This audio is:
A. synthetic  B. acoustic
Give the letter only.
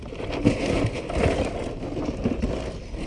B